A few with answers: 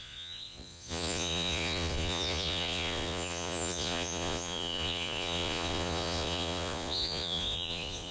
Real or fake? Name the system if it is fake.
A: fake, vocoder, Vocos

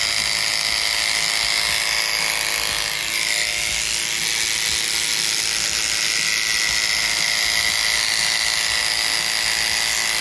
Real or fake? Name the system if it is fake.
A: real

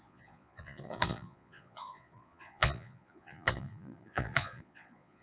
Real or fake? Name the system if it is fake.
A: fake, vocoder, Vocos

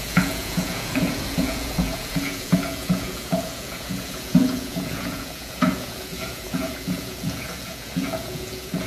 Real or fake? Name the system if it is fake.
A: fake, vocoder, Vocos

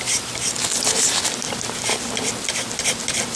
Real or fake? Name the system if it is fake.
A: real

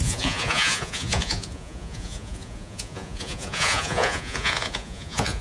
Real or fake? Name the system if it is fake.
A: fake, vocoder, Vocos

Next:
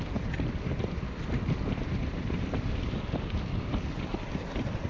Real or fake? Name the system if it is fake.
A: real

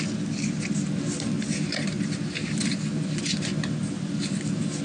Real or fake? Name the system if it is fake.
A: real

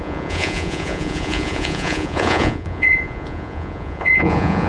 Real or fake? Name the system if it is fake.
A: fake, vocoder, Vocos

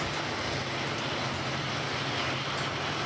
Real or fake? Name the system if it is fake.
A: real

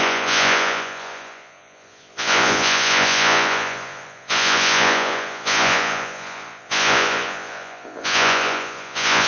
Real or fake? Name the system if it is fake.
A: fake, vocoder, Vocos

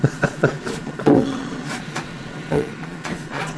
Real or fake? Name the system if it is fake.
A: fake, vocoder, Vocos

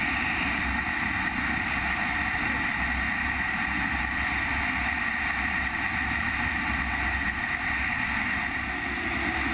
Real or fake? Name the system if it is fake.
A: real